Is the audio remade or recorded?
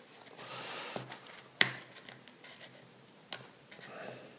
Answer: recorded